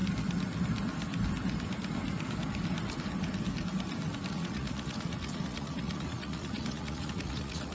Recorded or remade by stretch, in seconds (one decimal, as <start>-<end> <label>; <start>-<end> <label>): 0.0-4.3 recorded; 4.3-7.7 remade